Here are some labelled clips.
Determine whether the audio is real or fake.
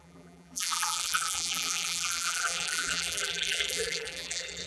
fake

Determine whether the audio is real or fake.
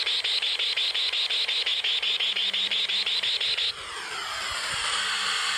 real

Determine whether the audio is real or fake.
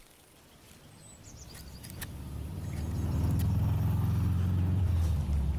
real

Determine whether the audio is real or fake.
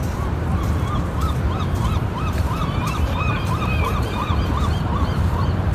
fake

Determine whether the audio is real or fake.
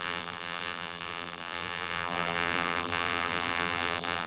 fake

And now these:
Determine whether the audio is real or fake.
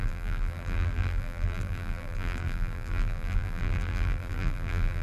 fake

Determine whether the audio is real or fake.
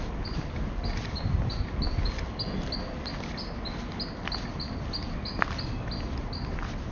real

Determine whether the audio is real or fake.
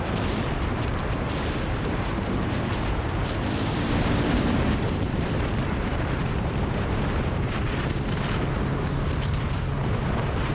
fake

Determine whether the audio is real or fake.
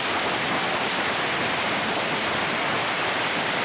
fake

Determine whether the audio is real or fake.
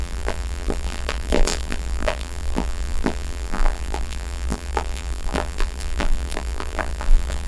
fake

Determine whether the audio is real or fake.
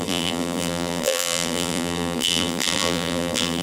fake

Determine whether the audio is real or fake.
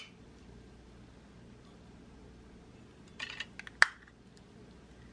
real